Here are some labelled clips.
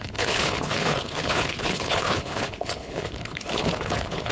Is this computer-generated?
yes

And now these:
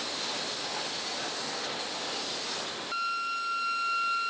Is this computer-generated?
no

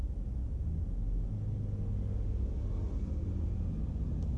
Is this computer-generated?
no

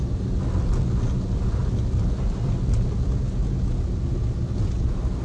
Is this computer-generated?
no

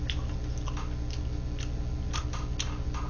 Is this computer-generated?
no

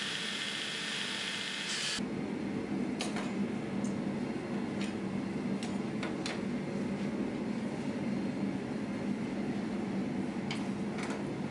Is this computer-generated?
no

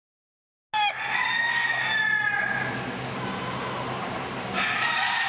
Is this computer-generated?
no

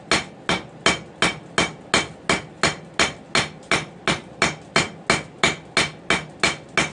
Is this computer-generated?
no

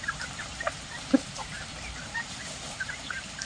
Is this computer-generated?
yes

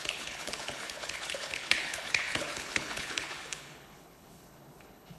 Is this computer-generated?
yes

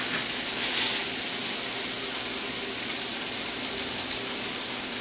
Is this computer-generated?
no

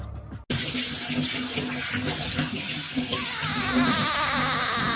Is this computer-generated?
no